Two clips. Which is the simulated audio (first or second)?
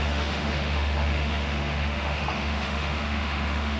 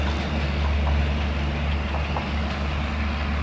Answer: first